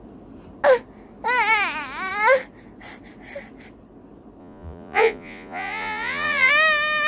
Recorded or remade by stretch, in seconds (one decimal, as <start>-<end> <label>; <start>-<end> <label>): 0.0-4.4 recorded; 4.4-6.5 remade; 6.5-7.1 recorded